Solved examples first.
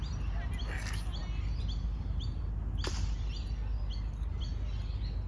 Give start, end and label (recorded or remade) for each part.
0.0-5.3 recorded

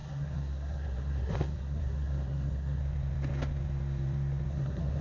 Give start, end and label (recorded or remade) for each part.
0.0-2.8 remade; 2.8-4.5 recorded; 4.5-5.0 remade

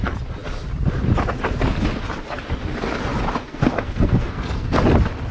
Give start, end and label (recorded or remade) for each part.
0.0-3.4 recorded; 3.4-4.8 remade; 4.8-5.3 recorded

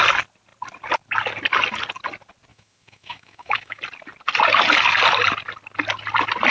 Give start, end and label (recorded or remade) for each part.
0.0-2.5 recorded; 2.5-3.8 remade; 3.8-6.5 recorded

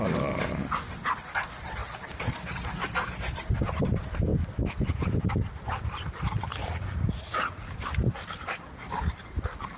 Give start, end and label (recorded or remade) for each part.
0.0-6.6 recorded; 6.6-7.7 remade; 7.7-9.8 recorded